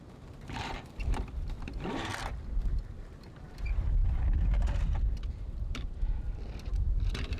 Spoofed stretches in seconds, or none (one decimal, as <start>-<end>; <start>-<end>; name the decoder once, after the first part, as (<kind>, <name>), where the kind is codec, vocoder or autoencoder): 0.0-2.1 (vocoder, BigVGAN v2); 2.7-6.2; 7.0-7.4